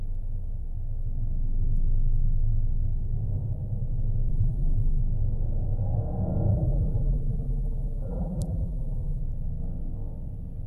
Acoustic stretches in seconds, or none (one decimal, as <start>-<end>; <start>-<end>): 0.0-4.3; 5.0-6.5; 9.2-10.7